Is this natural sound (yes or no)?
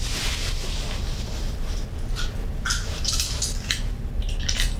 yes